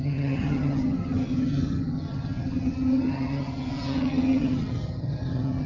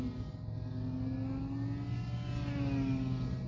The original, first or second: second